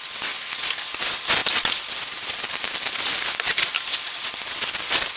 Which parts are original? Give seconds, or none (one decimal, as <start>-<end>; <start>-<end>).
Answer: 0.0-5.2